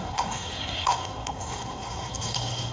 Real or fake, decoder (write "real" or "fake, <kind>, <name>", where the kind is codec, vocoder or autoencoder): fake, codec, SNAC